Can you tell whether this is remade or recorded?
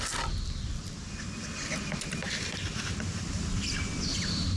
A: recorded